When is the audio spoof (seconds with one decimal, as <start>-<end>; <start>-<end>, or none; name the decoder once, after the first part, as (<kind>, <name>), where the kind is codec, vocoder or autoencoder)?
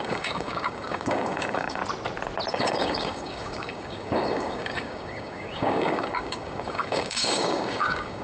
0.0-1.8 (codec, DAC); 2.5-8.2